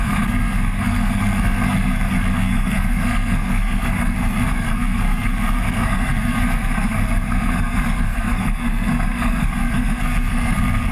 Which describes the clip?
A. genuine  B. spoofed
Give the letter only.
B